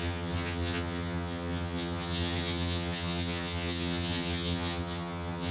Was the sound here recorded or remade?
remade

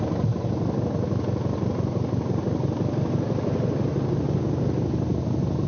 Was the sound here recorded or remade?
recorded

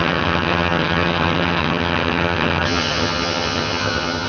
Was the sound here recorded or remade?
remade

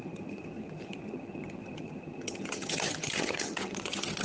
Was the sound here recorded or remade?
remade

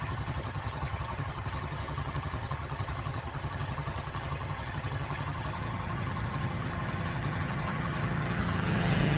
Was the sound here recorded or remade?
remade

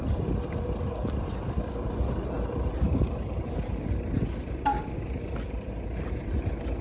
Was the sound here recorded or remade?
recorded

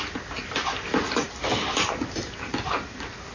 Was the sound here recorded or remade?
recorded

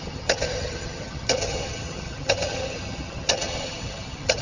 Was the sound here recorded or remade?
remade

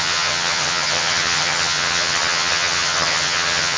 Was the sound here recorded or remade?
remade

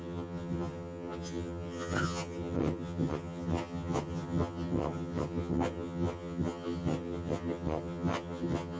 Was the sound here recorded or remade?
remade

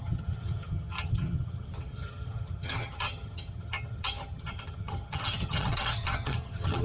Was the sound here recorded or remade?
remade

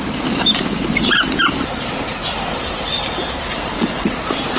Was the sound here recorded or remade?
recorded